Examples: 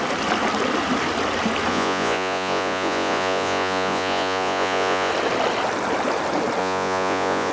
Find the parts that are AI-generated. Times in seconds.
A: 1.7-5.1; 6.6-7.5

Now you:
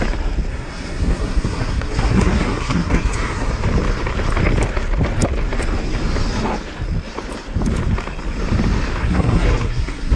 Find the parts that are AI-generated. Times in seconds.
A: 0.5-3.5; 9.0-10.2